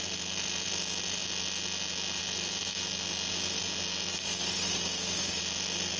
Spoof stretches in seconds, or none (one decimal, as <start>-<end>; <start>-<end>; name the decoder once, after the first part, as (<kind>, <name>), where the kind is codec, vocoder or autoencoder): 4.1-5.4 (codec, DAC)